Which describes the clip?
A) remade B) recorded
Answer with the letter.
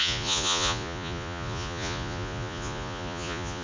A